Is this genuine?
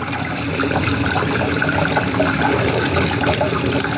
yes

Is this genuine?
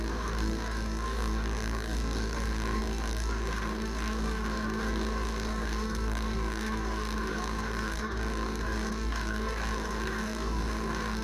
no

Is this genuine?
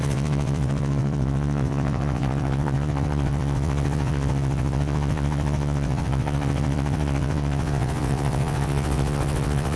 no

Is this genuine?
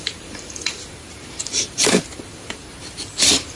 no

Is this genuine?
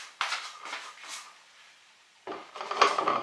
yes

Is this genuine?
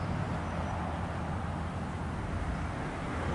yes